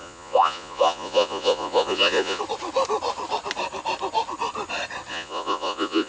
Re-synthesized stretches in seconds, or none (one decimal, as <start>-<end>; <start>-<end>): 0.0-2.4; 5.1-6.1